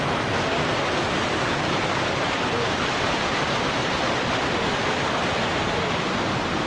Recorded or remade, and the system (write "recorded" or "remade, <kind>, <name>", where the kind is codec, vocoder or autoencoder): recorded